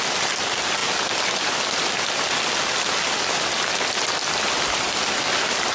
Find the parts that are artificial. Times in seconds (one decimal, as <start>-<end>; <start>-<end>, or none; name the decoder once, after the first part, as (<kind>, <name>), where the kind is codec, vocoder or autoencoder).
none